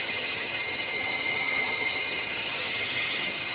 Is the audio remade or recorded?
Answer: remade